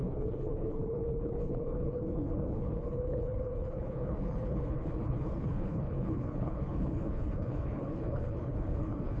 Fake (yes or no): yes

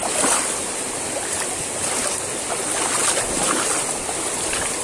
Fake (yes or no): no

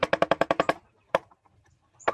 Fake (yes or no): yes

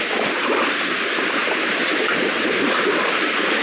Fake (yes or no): no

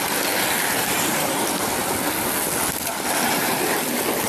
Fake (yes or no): no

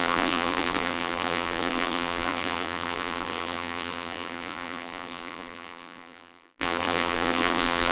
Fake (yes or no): yes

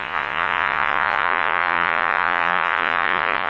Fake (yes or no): yes